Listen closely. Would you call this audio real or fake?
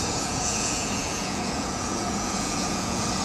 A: fake